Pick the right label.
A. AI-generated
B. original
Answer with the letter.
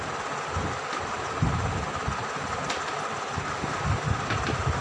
B